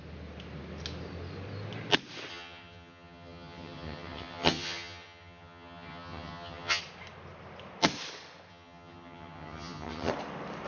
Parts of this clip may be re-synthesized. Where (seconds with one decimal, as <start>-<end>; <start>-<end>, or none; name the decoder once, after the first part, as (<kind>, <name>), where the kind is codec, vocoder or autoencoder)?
2.3-6.8 (vocoder, HiFi-GAN); 8.5-10.1